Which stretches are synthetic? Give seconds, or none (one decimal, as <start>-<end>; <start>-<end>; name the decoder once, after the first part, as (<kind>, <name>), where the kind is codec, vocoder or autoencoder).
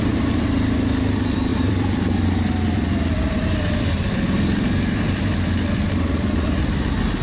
1.5-5.8 (vocoder, BigVGAN v2)